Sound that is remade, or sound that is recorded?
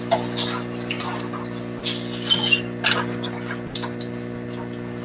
recorded